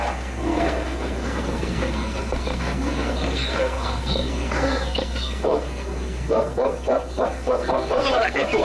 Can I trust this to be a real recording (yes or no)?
no